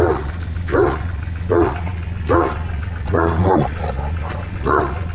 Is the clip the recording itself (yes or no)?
no